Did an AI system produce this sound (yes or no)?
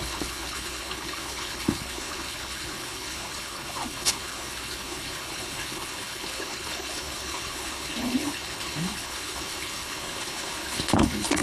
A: yes